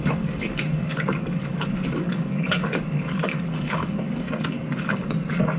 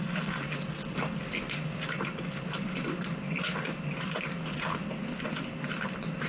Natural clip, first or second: second